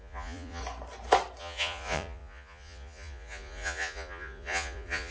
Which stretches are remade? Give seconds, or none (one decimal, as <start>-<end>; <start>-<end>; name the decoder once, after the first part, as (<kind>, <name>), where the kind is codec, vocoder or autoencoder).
0.0-0.6 (vocoder, Vocos); 1.4-5.1